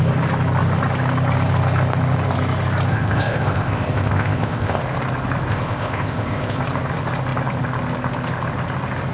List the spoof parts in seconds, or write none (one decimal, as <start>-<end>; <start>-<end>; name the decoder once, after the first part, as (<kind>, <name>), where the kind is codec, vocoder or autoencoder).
2.9-4.8 (codec, ZipCodec); 5.5-6.6